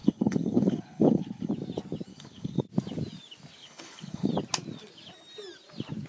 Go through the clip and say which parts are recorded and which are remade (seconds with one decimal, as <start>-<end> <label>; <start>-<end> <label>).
0.0-1.5 remade; 1.5-2.1 recorded; 2.1-2.6 remade; 2.6-3.6 recorded; 3.6-4.3 remade; 4.3-6.1 recorded